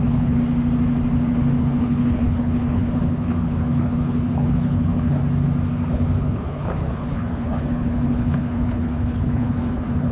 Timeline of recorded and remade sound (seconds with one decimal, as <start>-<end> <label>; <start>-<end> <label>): 0.0-0.4 remade; 0.4-1.6 recorded; 1.6-5.2 remade; 5.2-5.9 recorded; 5.9-10.1 remade